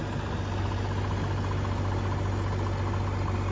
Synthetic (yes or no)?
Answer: no